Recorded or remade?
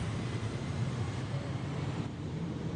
remade